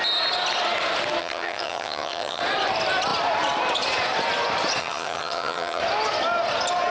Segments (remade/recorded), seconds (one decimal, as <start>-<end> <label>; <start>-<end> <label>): 0.0-1.2 recorded; 1.2-2.4 remade; 2.4-4.8 recorded; 4.8-5.8 remade; 5.8-6.9 recorded